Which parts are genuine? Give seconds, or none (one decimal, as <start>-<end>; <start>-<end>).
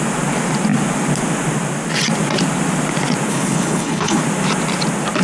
0.0-3.3; 4.2-5.2